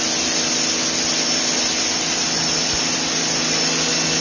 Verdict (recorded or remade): recorded